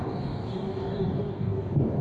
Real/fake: fake